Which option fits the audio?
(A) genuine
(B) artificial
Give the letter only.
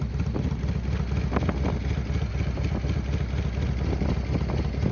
A